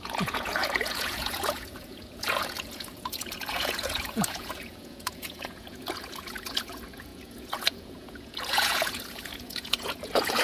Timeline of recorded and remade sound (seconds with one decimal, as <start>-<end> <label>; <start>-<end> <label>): 0.0-10.4 remade